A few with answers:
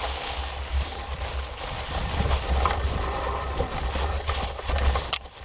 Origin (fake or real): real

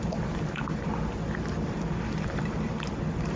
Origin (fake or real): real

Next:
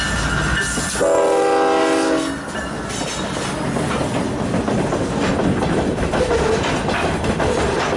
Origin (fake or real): real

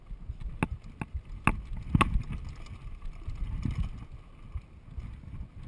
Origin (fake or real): real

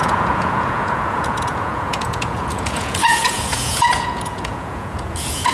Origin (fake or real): fake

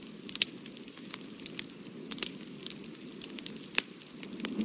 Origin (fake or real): real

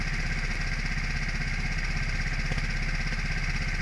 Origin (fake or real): real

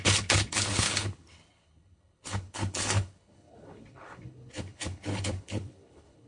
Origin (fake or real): fake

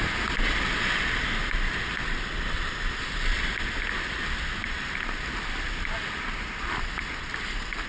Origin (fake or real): real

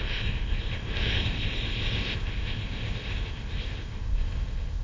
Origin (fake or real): fake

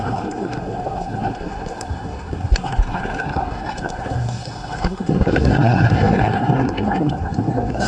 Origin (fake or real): fake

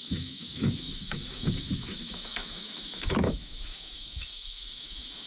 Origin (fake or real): fake